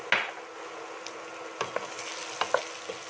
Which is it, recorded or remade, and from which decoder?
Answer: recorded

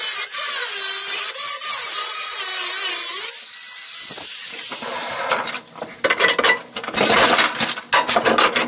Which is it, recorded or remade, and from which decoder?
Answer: recorded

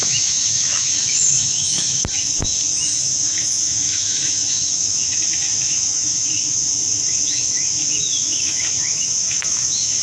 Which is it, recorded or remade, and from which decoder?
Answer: remade, autoencoder, DAC-VAE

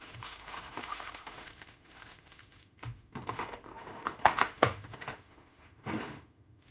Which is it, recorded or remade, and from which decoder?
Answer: remade, autoencoder, DAC-VAE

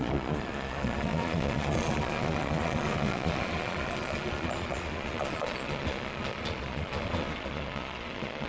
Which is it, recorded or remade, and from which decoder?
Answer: remade, vocoder, Vocos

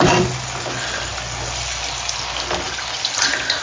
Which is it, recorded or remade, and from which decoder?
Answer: recorded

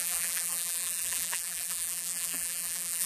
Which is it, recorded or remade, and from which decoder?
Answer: remade, vocoder, BigVGAN v2